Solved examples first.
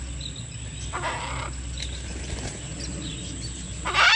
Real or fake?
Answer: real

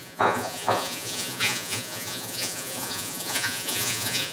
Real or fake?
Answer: fake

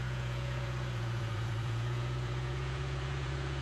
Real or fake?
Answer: fake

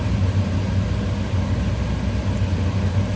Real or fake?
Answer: real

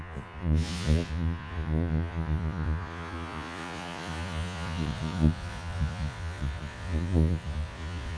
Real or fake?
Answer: fake